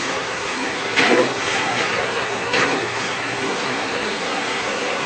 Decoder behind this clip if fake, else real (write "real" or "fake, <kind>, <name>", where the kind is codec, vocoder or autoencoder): fake, codec, SNAC